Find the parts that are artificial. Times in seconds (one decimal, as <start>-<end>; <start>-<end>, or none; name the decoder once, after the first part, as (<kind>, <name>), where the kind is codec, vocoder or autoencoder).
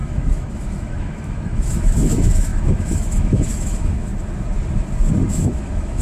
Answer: 0.0-4.1 (autoencoder, DAC-VAE); 5.3-6.0